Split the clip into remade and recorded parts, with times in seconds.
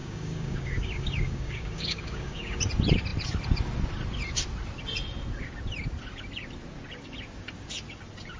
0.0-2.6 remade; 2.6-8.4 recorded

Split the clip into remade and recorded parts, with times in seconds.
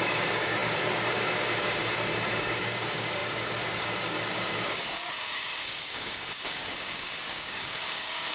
0.0-8.3 remade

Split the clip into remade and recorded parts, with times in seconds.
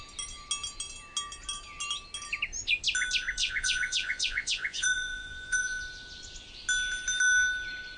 0.0-3.4 recorded; 3.4-5.8 remade; 5.8-8.0 recorded